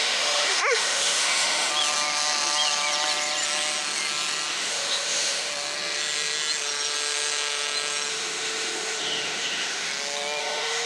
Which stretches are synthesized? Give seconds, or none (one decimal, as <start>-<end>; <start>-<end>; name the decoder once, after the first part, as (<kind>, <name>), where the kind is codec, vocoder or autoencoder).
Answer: 0.0-1.7 (autoencoder, DAC-VAE); 4.5-5.5; 8.1-9.9; 10.4-10.9